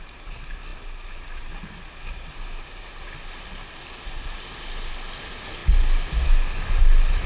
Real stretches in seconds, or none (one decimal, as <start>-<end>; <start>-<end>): 0.0-7.3